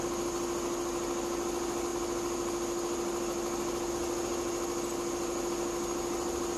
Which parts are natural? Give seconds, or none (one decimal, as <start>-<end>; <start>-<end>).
0.0-6.6